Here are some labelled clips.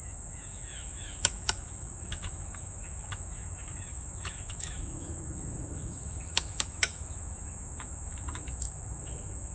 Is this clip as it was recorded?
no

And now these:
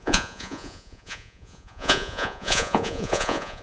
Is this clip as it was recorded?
no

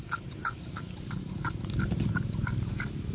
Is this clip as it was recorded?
yes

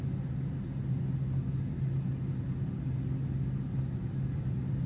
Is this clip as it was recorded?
yes